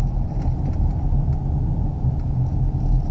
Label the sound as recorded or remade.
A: recorded